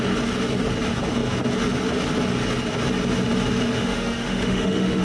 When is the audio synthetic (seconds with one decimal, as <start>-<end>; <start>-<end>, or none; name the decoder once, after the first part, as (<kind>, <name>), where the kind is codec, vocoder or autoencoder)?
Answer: 3.8-5.0 (autoencoder, DAC-VAE)